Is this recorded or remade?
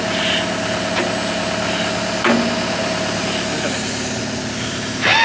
recorded